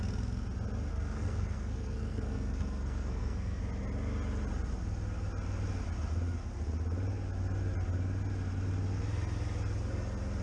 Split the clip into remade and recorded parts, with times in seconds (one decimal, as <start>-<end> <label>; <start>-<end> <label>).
0.0-0.9 recorded; 0.9-3.6 remade; 3.6-10.4 recorded